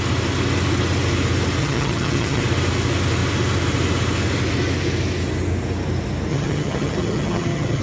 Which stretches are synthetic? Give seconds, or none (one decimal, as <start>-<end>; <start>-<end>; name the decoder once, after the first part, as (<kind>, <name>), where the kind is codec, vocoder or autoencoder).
1.6-2.4 (vocoder, HiFi-GAN); 6.3-7.8